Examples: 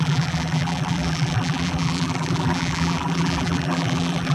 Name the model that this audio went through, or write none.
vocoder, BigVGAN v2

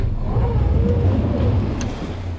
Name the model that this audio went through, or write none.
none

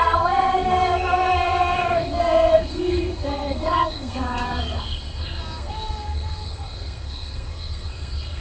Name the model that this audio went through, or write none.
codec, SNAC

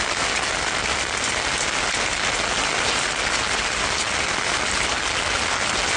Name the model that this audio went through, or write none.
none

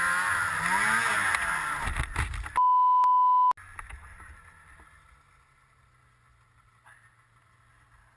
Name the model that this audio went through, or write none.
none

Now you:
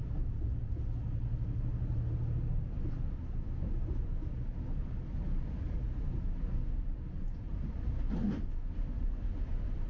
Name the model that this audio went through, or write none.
none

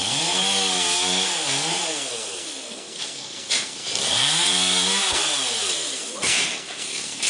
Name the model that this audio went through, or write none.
codec, SNAC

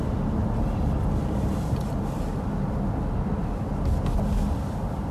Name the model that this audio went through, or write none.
none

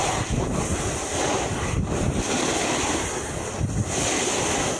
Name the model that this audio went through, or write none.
none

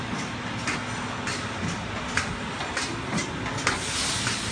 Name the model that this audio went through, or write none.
none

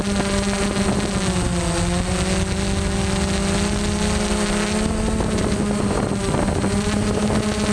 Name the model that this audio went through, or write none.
none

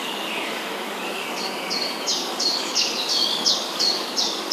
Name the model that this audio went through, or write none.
codec, DAC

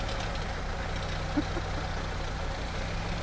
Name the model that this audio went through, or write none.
none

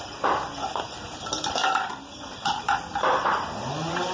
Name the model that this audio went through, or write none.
none